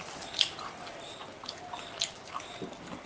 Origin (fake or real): real